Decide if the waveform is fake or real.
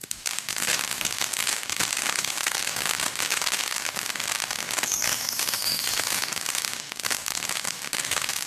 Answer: fake